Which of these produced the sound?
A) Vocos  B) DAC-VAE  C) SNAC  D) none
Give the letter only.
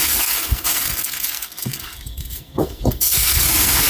C